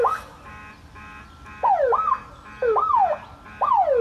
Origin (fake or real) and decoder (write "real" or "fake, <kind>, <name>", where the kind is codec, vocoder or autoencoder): real